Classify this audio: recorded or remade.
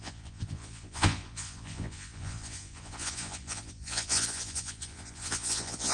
remade